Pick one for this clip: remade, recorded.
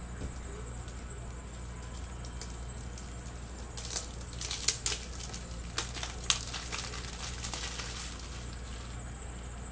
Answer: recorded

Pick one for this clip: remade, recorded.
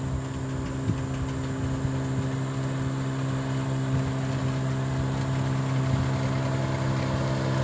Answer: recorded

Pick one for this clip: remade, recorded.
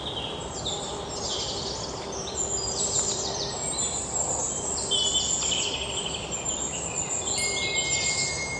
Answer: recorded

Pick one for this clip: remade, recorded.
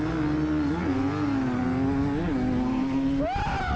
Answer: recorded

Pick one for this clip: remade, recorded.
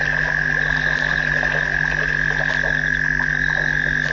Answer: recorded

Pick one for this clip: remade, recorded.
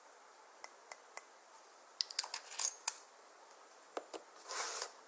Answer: recorded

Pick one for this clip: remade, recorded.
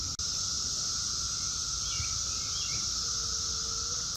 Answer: recorded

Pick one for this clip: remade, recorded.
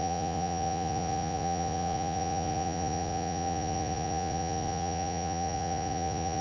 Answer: remade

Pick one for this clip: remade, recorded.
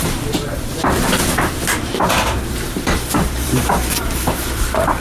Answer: remade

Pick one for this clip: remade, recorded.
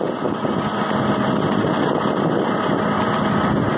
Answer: recorded